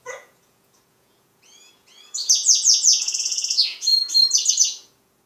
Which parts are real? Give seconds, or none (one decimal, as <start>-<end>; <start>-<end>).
3.9-4.5